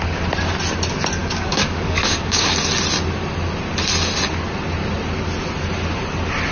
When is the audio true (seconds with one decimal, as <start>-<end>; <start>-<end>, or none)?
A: 0.0-1.2; 2.5-6.5